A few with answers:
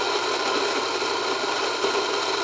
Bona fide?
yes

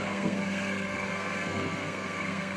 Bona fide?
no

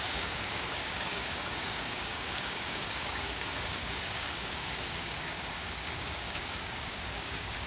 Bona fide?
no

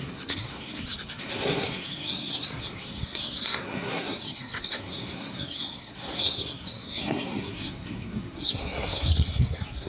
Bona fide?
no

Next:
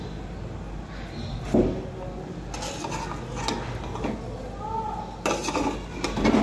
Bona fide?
yes